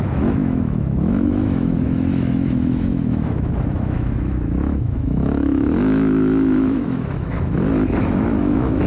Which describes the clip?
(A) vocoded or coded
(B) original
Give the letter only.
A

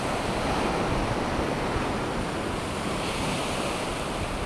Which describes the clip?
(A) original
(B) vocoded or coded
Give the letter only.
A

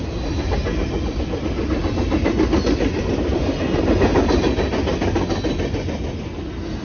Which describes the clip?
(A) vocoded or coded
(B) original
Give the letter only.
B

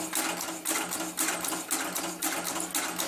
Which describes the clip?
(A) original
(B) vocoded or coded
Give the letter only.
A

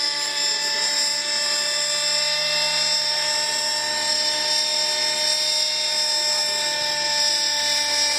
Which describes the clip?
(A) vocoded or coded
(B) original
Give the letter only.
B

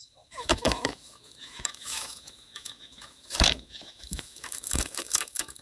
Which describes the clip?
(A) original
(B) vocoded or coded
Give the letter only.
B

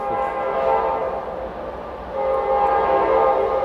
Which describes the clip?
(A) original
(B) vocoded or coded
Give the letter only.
A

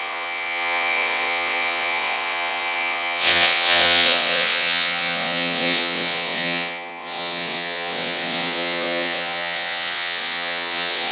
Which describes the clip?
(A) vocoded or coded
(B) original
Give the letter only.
A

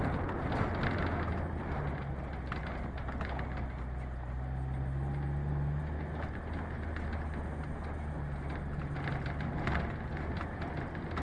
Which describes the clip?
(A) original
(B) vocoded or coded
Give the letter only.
A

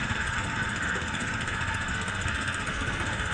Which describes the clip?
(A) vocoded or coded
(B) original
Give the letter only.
A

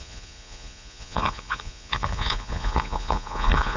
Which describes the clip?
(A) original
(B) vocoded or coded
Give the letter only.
B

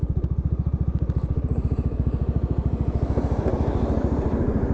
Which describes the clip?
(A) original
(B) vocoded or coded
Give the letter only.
B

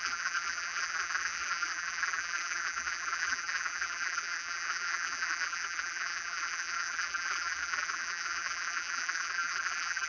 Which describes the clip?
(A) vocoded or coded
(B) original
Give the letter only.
A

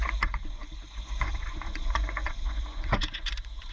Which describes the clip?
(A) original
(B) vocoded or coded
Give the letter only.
B